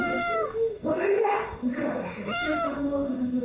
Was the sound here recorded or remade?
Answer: remade